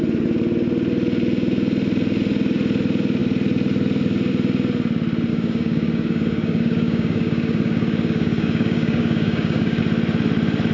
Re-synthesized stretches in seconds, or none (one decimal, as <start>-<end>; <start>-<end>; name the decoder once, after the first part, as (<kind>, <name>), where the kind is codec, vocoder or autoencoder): 5.3-9.8 (codec, DAC)